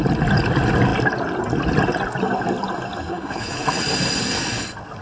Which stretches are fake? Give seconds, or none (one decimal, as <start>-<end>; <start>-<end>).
3.1-3.7